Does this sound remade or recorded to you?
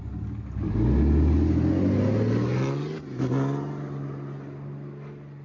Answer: recorded